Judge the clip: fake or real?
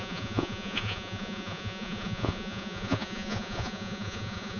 fake